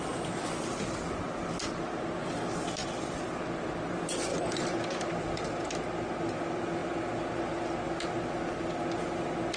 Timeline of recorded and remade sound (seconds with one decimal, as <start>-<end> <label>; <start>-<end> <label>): 0.0-2.8 recorded; 2.8-3.4 remade; 3.4-9.6 recorded